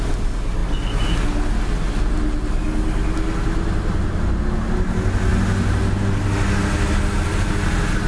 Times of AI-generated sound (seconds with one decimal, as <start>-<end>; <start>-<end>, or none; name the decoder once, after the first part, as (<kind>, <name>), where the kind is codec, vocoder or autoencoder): none